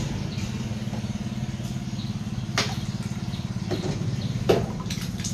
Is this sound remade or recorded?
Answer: recorded